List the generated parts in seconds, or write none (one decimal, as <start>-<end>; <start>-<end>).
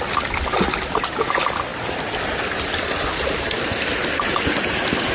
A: none